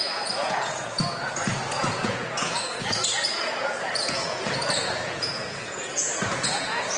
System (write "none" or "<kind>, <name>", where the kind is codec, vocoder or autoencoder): vocoder, Vocos